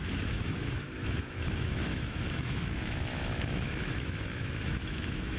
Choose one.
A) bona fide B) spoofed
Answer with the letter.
B